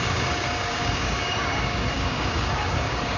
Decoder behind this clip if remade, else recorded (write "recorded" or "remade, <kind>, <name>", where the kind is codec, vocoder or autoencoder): remade, codec, DAC